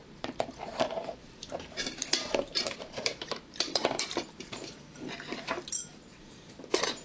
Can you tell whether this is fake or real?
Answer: fake